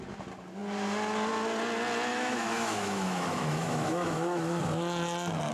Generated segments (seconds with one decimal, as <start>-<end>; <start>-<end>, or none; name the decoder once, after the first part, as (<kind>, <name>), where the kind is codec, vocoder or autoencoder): 2.1-4.6 (autoencoder, DAC-VAE)